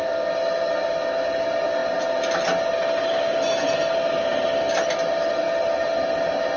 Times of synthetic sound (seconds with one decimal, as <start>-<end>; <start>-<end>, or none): none